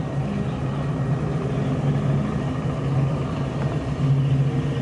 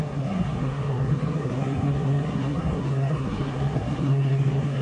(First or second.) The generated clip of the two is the second